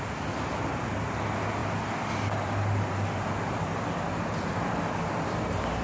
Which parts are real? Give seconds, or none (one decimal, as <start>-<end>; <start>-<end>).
0.0-5.8